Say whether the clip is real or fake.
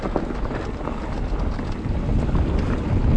real